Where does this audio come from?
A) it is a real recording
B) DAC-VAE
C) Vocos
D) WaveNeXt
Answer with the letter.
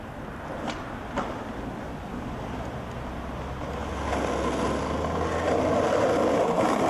A